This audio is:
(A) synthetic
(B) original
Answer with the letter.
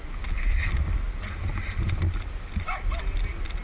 B